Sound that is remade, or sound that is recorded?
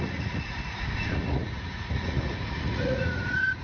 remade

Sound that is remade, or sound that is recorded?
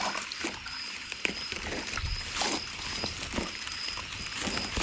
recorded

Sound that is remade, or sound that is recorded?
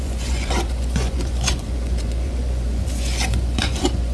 remade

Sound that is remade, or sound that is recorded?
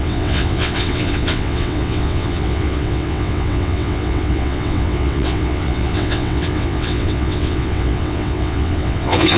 remade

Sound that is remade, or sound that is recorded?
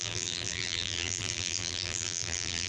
remade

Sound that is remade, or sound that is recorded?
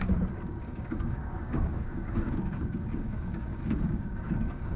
remade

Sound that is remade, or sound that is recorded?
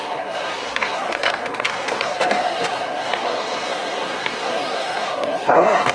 remade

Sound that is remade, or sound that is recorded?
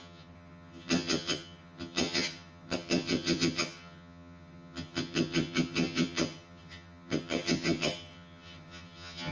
remade